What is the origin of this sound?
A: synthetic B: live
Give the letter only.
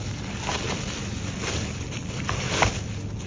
B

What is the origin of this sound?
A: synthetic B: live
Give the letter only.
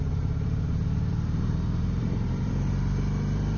A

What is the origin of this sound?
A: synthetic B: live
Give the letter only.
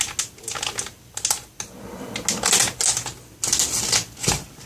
B